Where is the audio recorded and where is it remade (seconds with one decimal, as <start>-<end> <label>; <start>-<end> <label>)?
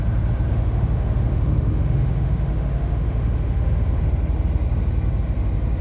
0.0-0.5 recorded; 0.5-4.0 remade; 4.0-5.8 recorded